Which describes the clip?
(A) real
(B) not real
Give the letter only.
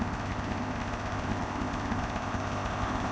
B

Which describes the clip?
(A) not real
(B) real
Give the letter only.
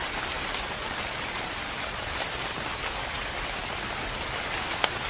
B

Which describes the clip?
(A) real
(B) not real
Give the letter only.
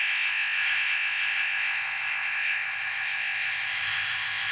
B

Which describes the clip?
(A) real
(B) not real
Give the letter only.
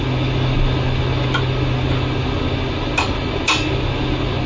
A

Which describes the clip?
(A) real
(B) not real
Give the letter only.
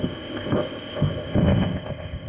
B